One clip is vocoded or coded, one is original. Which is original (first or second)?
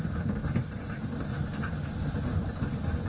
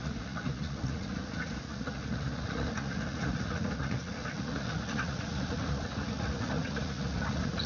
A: first